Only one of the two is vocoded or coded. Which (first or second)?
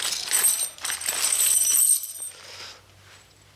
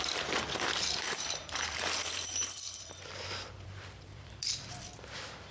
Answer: second